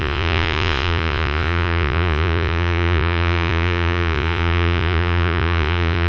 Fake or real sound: fake